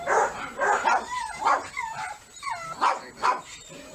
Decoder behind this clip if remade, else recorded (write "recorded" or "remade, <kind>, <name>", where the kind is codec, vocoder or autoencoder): remade, vocoder, BigVGAN v2